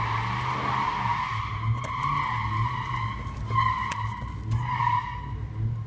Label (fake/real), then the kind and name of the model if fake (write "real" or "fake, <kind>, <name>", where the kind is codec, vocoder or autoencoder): real